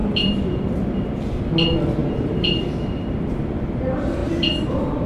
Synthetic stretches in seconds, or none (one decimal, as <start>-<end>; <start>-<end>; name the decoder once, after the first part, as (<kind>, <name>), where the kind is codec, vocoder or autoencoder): 0.0-0.7 (vocoder, BigVGAN v2); 2.0-2.6; 4.2-5.1